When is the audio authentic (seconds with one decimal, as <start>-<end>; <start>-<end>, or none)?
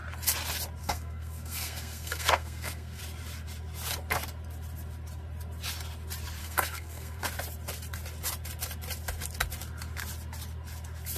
0.0-0.8; 3.0-6.4; 7.2-11.2